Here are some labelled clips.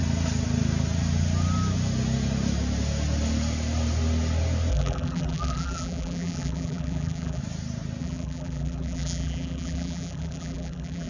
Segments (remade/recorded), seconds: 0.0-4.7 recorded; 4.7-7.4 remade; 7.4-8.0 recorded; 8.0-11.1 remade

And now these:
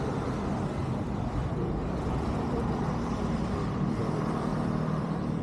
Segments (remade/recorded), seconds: 0.0-0.8 recorded; 0.8-4.0 remade; 4.0-4.5 recorded; 4.5-5.4 remade